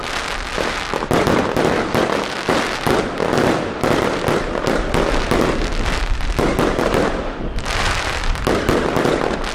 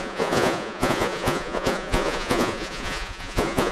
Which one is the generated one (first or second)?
second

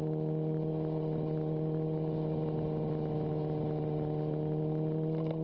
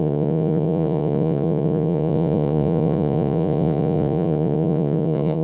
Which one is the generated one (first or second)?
second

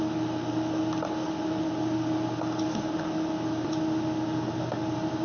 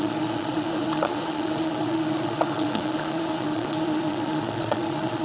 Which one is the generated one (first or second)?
second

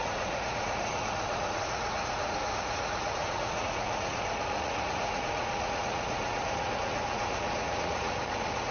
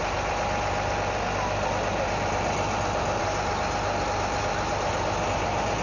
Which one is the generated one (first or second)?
first